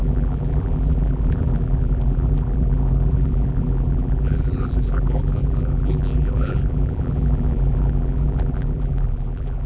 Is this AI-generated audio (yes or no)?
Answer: yes